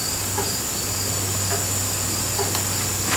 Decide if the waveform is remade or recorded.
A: recorded